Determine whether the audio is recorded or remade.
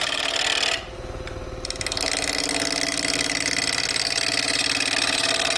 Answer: recorded